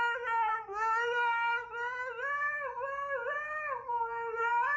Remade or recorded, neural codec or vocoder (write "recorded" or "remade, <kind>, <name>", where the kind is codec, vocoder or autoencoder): recorded